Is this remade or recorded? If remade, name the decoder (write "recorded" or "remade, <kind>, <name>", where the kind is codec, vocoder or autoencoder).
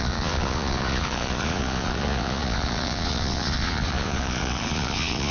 remade, vocoder, Vocos